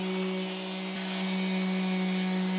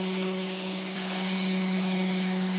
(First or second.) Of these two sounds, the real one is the first